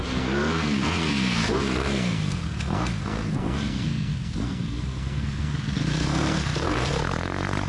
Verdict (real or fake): fake